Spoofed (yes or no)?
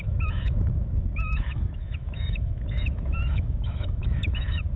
yes